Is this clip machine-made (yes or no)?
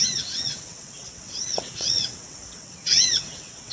yes